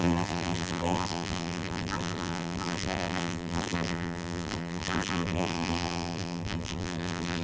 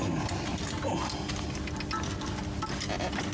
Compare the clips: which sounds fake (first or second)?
first